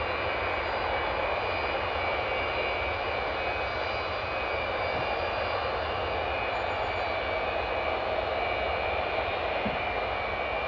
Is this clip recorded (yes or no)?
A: yes